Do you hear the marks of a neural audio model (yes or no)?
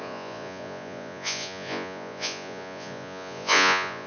yes